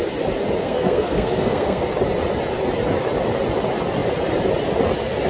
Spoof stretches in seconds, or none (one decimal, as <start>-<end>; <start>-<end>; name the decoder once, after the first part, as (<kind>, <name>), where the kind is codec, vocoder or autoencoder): 0.6-1.9 (codec, SNAC)